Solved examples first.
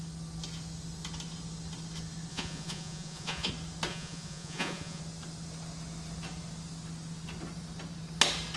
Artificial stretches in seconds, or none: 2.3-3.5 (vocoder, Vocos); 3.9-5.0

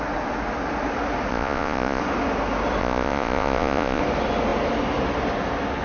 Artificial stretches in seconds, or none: 1.3-2.0 (vocoder, Vocos); 2.8-4.0

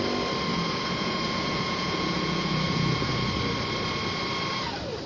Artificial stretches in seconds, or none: 0.5-3.3 (vocoder, Vocos)

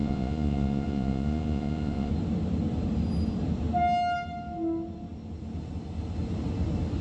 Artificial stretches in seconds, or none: 0.0-2.1 (vocoder, Vocos)

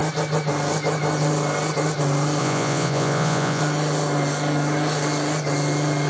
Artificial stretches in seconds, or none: 2.4-3.6 (vocoder, Vocos)

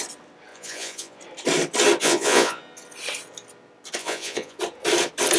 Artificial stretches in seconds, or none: 0.5-1.2 (vocoder, Vocos); 2.0-2.6; 4.0-4.6